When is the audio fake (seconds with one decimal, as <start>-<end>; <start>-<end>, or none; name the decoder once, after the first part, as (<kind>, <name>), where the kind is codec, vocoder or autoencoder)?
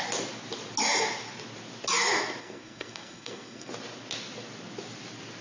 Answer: 2.4-3.7 (codec, SNAC)